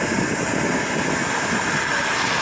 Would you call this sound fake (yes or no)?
no